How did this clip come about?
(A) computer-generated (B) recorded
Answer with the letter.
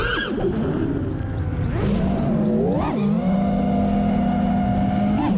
B